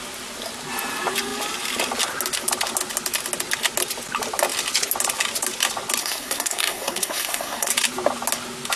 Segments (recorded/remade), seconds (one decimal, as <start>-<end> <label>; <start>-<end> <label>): 0.0-6.0 recorded; 6.0-7.7 remade; 7.7-8.8 recorded

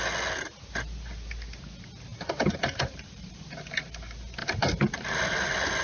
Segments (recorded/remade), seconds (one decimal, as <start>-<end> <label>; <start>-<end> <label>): 0.0-2.1 recorded; 2.1-3.5 remade; 3.5-4.4 recorded; 4.4-4.9 remade; 4.9-5.8 recorded

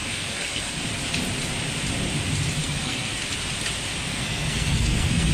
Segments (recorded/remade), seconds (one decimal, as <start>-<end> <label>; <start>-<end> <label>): 0.0-0.9 remade; 0.9-2.6 recorded; 2.6-3.2 remade; 3.2-4.1 recorded; 4.1-5.3 remade

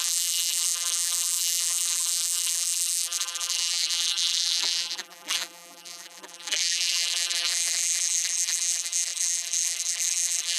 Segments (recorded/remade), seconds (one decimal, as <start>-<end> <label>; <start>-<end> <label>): 0.0-10.6 remade

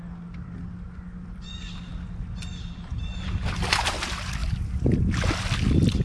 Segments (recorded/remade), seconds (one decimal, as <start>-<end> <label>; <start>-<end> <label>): 0.0-6.0 recorded

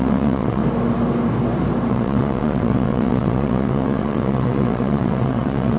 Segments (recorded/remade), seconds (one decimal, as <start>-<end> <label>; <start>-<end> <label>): 0.0-0.6 remade; 0.6-1.9 recorded; 1.9-5.8 remade

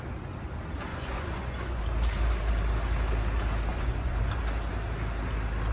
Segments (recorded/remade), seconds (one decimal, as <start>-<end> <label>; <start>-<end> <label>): 0.0-0.9 recorded; 0.9-1.8 remade; 1.8-3.7 recorded; 3.7-4.4 remade; 4.4-5.7 recorded

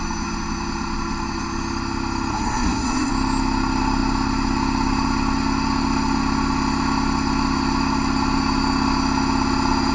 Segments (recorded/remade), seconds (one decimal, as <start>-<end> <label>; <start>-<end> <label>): 0.0-2.3 recorded; 2.3-3.1 remade; 3.1-9.9 recorded